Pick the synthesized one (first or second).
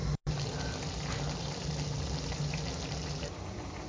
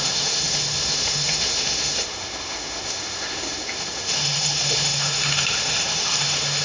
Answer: second